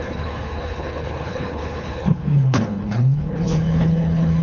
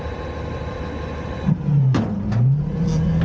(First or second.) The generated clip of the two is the first